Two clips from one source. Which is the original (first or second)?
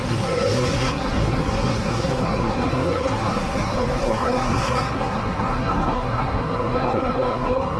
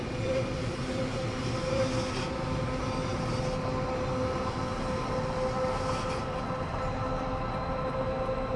second